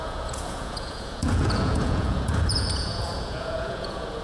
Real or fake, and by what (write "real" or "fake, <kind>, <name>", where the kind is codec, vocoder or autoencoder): fake, vocoder, Vocos